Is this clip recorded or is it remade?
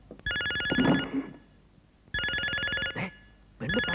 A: recorded